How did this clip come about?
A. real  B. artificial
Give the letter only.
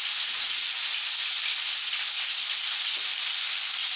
A